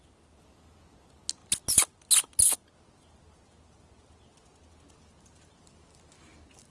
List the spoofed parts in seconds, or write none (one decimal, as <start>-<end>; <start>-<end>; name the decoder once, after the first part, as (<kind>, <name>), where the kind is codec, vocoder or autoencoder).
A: none